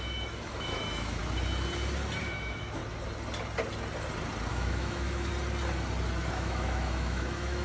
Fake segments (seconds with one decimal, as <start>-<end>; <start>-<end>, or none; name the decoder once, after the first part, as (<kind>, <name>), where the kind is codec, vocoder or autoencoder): 0.0-1.2 (autoencoder, DAC-VAE); 2.2-2.8; 4.5-5.3; 6.3-7.6